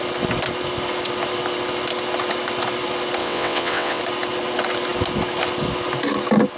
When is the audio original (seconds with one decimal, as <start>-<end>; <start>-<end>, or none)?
0.0-3.2; 4.0-6.6